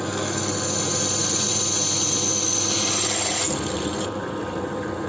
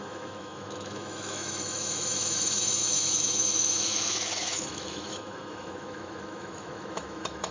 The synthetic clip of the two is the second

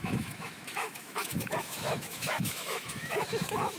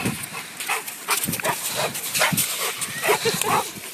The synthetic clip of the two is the first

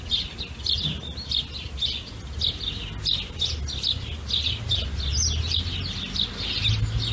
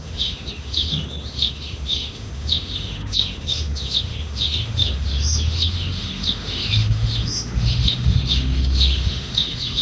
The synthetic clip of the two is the second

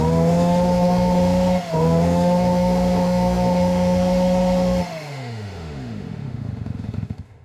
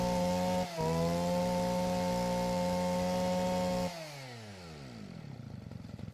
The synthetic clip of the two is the first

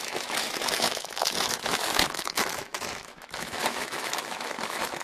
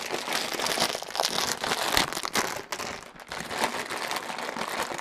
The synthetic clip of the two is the first